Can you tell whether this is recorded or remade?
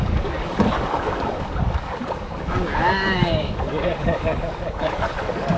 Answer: remade